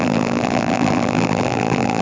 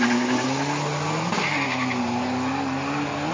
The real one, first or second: second